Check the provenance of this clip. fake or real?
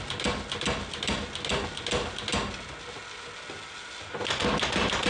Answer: real